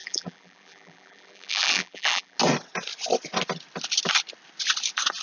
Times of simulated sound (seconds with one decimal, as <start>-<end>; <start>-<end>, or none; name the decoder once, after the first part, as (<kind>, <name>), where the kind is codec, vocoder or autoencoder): 0.0-2.4 (vocoder, BigVGAN v2)